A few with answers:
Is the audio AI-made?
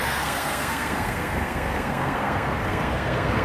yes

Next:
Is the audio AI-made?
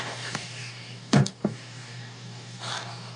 yes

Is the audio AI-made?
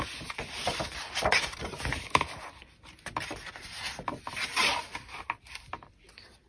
no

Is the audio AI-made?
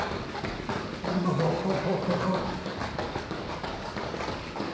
yes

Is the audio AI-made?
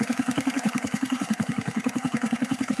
yes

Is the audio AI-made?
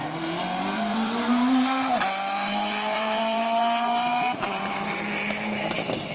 yes